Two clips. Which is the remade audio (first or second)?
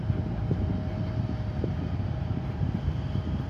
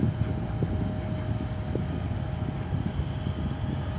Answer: first